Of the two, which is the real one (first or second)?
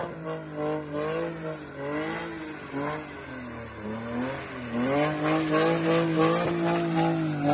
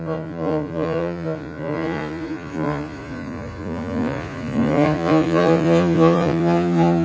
first